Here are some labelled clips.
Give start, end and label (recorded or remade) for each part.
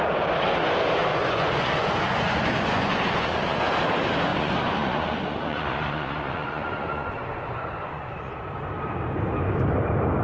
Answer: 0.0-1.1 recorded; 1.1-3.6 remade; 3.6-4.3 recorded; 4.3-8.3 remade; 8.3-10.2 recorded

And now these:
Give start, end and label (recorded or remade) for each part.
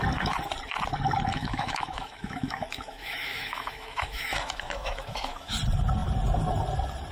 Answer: 0.0-1.3 recorded; 1.3-5.5 remade; 5.5-7.1 recorded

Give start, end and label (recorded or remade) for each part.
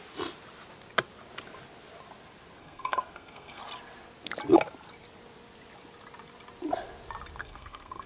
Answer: 0.0-2.6 recorded; 2.6-3.6 remade; 3.6-7.4 recorded; 7.4-8.1 remade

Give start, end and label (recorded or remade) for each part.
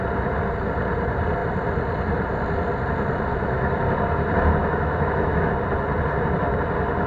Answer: 0.0-3.3 recorded; 3.3-3.8 remade; 3.8-4.6 recorded; 4.6-5.5 remade; 5.5-7.1 recorded